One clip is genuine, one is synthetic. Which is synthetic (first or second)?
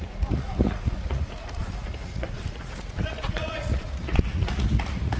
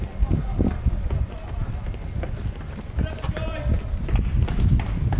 first